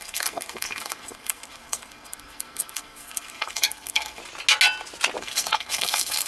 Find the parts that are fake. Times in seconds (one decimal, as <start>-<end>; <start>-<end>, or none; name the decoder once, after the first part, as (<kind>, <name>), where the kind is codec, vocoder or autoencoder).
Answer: 0.0-4.2 (codec, SNAC); 5.2-6.3